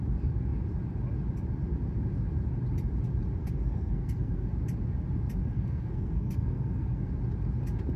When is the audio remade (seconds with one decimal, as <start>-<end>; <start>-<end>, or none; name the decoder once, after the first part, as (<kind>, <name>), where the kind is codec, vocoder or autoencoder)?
3.4-4.5 (codec, SNAC); 5.4-7.1